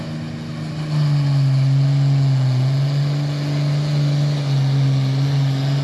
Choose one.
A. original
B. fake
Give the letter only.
A